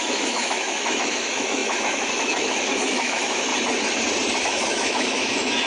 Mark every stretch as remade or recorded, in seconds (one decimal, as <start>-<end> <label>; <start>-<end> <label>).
0.0-3.5 remade; 3.5-4.4 recorded; 4.4-5.7 remade